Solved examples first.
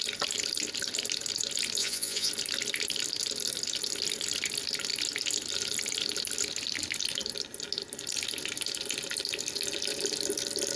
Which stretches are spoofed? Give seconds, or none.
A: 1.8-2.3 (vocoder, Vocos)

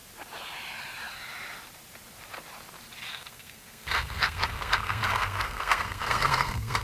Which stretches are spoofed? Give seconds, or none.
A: 3.1-6.8 (codec, SNAC)

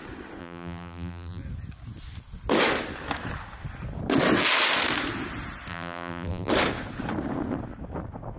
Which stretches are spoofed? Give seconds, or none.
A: 0.4-1.4 (vocoder, BigVGAN v2); 5.7-6.5

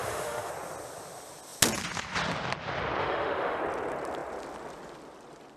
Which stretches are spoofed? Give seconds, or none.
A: 0.0-0.5 (autoencoder, DAC-VAE); 3.0-3.6

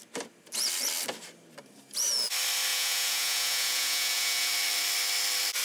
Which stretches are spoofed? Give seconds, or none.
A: 2.7-4.5 (vocoder, Vocos)

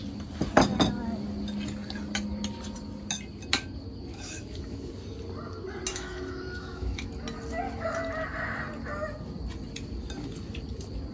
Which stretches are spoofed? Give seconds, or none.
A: 4.1-4.9 (autoencoder, DAC-VAE); 5.9-7.1